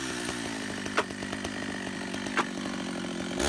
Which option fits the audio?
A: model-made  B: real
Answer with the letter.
B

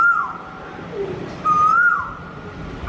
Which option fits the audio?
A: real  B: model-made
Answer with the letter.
A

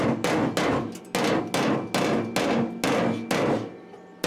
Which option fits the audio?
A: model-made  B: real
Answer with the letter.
B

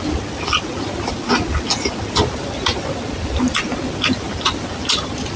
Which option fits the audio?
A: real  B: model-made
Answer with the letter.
A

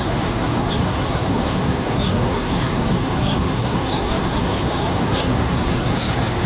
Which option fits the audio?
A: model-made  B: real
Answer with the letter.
A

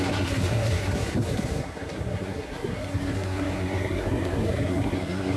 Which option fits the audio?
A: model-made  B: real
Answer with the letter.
A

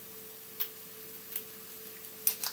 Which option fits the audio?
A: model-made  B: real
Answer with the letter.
B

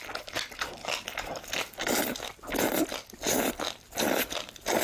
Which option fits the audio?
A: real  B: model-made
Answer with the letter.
A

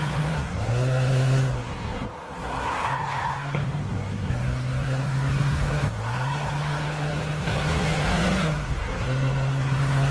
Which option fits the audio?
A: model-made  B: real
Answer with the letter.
A